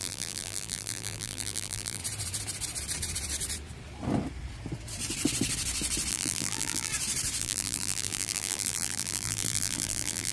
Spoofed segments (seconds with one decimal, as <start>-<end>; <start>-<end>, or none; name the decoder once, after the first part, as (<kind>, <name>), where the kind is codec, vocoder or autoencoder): 0.0-2.0 (vocoder, BigVGAN v2); 6.1-6.9; 7.4-10.3